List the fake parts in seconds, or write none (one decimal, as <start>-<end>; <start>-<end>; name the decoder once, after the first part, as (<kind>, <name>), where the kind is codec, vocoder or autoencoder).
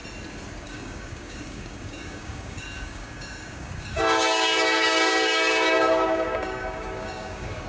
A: 0.6-7.7 (codec, DAC)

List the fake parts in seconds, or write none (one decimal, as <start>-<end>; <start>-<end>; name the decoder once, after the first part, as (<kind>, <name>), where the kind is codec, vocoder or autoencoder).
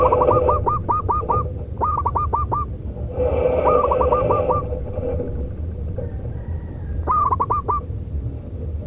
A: none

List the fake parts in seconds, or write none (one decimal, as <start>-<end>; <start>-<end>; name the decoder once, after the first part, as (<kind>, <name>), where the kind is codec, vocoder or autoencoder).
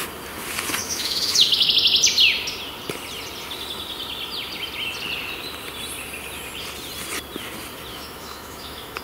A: 0.8-1.7 (autoencoder, DAC-VAE); 7.9-9.0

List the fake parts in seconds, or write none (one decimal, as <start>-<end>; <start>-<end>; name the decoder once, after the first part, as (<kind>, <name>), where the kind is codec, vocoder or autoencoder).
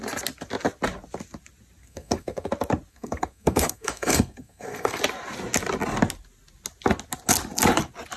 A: 1.8-2.5 (codec, SNAC); 2.9-5.0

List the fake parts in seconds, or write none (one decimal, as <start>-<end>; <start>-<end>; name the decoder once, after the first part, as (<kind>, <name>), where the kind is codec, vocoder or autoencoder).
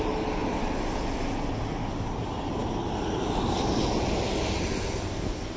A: 0.4-1.3 (vocoder, BigVGAN v2); 2.6-3.7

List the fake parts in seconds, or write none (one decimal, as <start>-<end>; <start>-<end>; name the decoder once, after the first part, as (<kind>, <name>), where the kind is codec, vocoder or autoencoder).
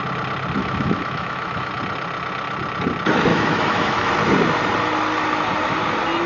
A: 0.6-1.7 (autoencoder, DAC-VAE); 3.3-4.1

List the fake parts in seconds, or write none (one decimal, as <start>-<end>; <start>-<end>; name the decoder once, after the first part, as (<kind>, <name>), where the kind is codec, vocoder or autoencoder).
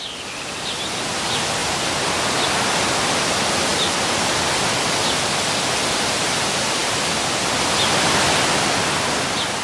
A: 1.6-2.5 (vocoder, BigVGAN v2)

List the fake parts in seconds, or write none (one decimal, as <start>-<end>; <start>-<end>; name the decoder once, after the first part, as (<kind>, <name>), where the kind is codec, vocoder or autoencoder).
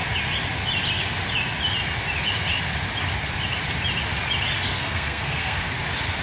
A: 4.7-5.7 (codec, SNAC)